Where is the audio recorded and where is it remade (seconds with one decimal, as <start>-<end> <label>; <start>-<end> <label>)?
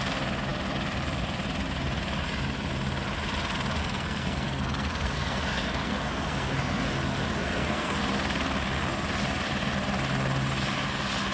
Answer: 0.0-3.8 recorded; 3.8-6.9 remade; 6.9-7.4 recorded; 7.4-8.0 remade; 8.0-11.3 recorded